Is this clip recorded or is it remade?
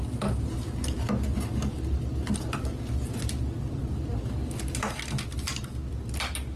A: recorded